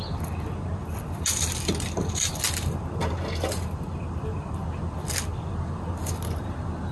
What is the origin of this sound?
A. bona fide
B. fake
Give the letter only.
A